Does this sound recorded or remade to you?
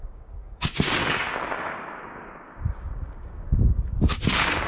remade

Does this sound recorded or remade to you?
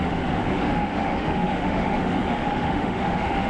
remade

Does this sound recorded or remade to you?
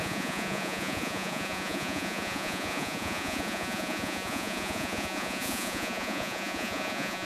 remade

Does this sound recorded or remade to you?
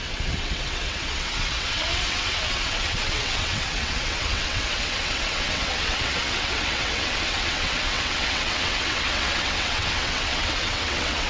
remade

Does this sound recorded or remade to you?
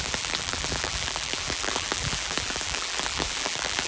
remade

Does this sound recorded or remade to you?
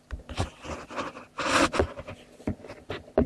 recorded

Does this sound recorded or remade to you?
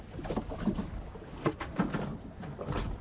recorded